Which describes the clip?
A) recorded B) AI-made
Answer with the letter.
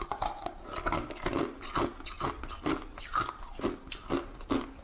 A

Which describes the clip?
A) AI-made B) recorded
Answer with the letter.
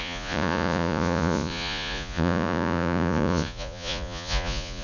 A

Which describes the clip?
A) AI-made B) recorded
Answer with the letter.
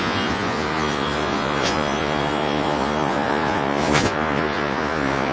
A